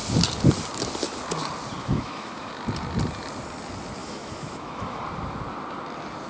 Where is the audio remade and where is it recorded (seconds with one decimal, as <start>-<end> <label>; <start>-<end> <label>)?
0.0-1.8 recorded; 1.8-2.5 remade; 2.5-4.0 recorded; 4.0-5.0 remade; 5.0-6.3 recorded